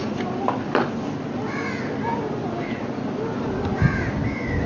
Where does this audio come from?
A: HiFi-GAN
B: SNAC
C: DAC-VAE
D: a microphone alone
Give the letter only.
D